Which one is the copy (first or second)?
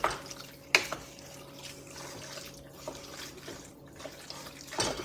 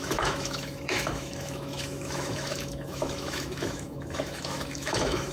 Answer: second